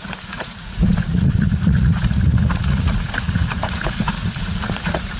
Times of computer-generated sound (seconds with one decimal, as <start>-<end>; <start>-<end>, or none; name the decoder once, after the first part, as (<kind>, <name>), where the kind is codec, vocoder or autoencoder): 0.0-5.2 (vocoder, Vocos)